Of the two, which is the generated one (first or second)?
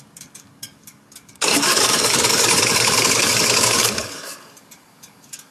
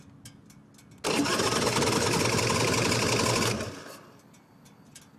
first